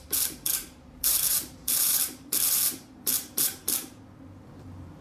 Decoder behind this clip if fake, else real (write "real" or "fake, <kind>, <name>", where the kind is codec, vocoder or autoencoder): fake, vocoder, BigVGAN v2